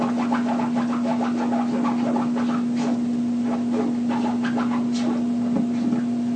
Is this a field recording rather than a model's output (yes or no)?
yes